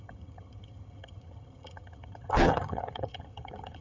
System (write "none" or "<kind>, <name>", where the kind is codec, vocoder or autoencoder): vocoder, HiFi-GAN